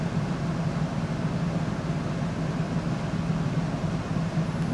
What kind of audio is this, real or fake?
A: real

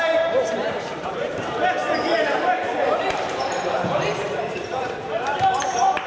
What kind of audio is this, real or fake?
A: fake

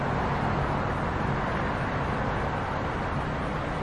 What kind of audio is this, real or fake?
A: real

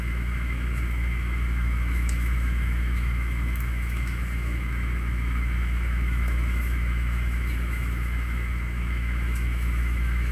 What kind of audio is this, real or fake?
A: fake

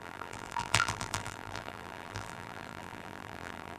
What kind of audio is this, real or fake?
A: fake